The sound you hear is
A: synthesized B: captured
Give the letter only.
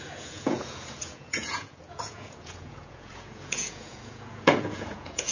A